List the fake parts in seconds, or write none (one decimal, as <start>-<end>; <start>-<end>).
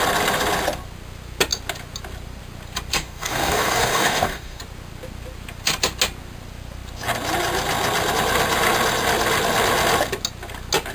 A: 2.9-4.6